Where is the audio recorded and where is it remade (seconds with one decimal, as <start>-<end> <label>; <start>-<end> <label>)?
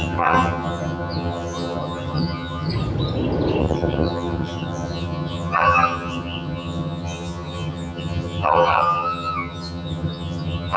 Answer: 0.0-2.7 remade; 2.7-3.6 recorded; 3.6-10.8 remade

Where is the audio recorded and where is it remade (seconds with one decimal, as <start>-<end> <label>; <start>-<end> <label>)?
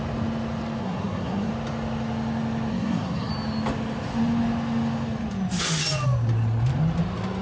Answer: 0.0-0.8 recorded; 0.8-1.5 remade; 1.5-2.7 recorded; 2.7-3.3 remade; 3.3-7.4 recorded